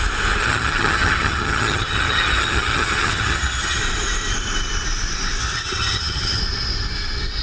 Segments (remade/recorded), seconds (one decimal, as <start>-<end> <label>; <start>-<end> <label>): 0.0-0.4 recorded; 0.4-3.8 remade; 3.8-5.4 recorded; 5.4-6.4 remade; 6.4-7.4 recorded